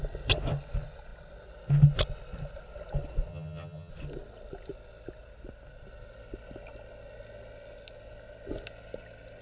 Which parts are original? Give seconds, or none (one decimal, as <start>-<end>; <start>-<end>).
0.0-3.3; 3.9-9.4